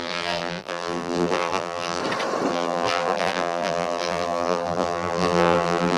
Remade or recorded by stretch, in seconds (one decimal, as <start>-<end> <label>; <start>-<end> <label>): 0.0-2.0 remade; 2.0-2.5 recorded; 2.5-6.0 remade